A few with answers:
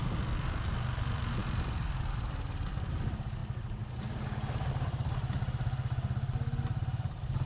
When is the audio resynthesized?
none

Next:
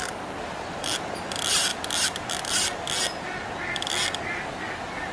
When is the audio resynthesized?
none

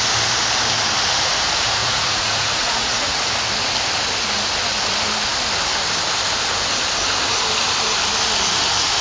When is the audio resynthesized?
1.8-3.3 (vocoder, Vocos)

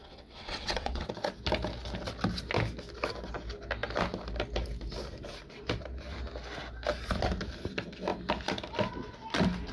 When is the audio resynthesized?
0.0-1.1 (vocoder, WaveNeXt)

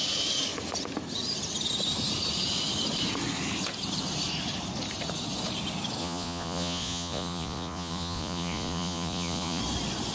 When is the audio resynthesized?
6.0-9.6 (vocoder, Vocos)

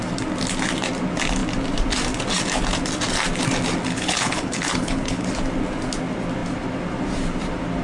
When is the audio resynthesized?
3.9-5.3 (codec, HILCodec)

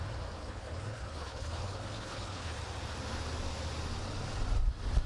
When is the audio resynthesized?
0.4-2.6 (codec, HILCodec)